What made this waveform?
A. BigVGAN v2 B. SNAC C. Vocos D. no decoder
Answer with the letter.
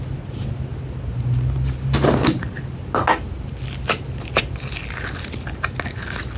D